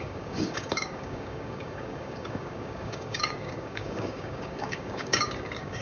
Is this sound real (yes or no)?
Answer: no